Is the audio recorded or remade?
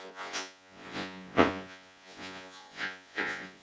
remade